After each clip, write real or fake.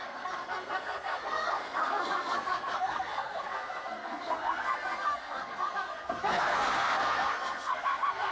fake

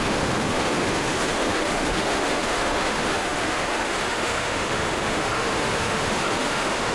fake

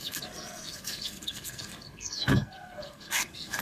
fake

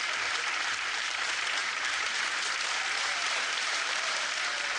fake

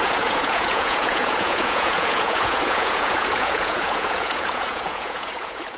fake